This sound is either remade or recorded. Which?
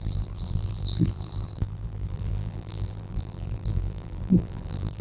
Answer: remade